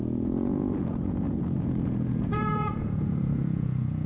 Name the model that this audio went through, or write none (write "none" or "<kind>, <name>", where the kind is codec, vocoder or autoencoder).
vocoder, Vocos